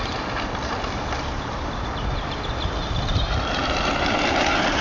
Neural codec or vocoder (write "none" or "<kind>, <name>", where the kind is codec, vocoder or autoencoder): none